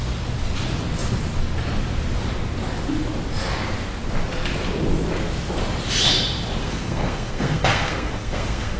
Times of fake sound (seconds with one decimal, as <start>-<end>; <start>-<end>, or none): 6.6-8.8